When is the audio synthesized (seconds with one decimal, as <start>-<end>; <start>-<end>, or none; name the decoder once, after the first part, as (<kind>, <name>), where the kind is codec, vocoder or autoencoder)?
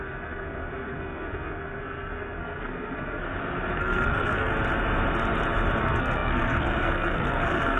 0.0-3.2 (codec, SNAC); 3.7-4.5; 5.8-7.8